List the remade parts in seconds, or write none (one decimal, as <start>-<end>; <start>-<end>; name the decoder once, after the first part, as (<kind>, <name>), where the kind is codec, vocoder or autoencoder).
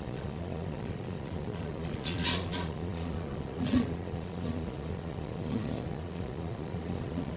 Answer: 0.0-7.4 (vocoder, Vocos)